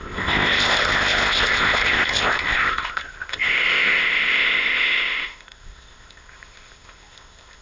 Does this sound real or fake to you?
fake